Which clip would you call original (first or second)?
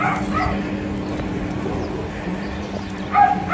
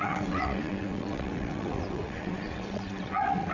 first